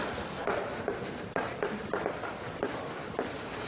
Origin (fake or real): real